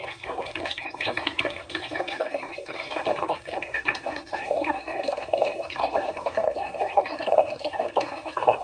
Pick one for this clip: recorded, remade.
remade